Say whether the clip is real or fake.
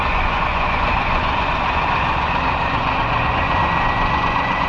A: fake